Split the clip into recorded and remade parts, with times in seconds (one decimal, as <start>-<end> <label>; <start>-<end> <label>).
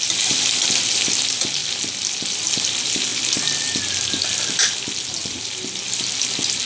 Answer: 0.0-6.7 recorded